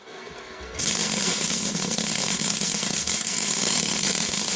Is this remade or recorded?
remade